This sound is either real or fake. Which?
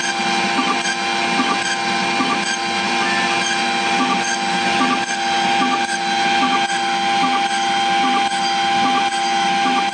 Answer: real